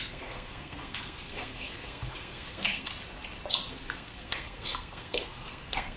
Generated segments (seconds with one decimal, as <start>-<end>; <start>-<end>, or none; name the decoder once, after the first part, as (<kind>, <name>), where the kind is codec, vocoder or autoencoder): 0.0-2.9 (codec, SNAC); 3.7-6.0